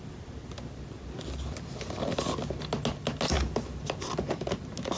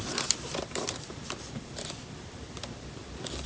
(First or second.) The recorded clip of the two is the first